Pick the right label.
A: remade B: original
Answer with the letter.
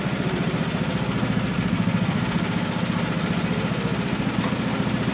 B